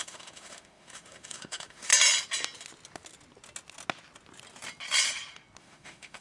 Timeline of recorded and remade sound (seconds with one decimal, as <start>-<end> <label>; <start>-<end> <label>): 0.0-1.9 remade; 1.9-5.6 recorded; 5.6-6.2 remade